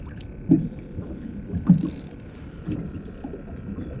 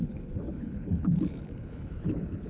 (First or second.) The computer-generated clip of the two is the second